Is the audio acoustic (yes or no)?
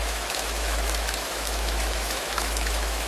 no